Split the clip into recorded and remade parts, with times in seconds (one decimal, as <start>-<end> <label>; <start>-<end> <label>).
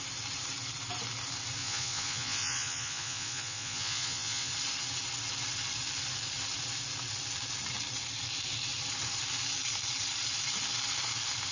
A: 0.0-1.6 recorded; 1.6-4.5 remade; 4.5-11.5 recorded